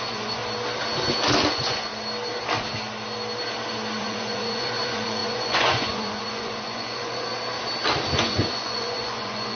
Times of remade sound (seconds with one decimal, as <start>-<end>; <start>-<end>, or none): 0.0-0.4; 1.5-1.9; 4.0-7.3; 8.2-9.5